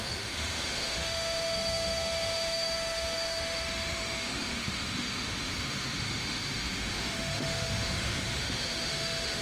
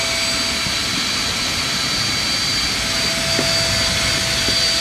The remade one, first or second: first